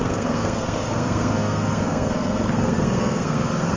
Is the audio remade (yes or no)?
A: yes